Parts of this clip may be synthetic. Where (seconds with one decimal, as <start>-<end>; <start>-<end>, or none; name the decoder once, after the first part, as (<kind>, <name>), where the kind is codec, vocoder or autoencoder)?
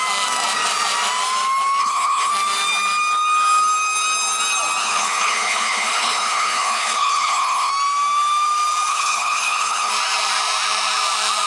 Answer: 1.8-2.3 (codec, HILCodec); 4.8-7.7; 8.9-9.9